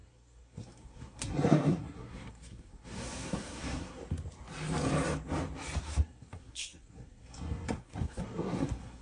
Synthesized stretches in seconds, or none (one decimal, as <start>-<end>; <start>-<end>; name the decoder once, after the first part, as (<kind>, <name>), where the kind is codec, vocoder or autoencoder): 0.0-4.0 (codec, SNAC); 5.8-9.0